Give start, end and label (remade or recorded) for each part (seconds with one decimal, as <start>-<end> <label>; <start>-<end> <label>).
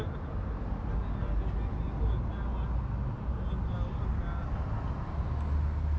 0.0-6.0 recorded